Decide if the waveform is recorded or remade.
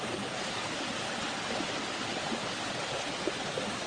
recorded